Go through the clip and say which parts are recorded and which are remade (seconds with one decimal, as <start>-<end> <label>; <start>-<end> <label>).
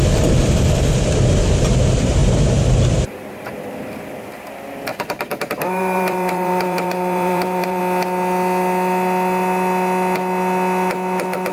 0.0-2.2 recorded; 2.2-3.3 remade; 3.3-4.9 recorded; 4.9-7.8 remade; 7.8-11.5 recorded